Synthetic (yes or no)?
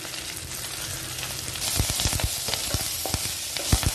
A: no